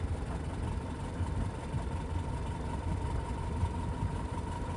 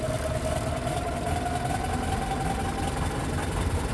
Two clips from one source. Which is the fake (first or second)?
first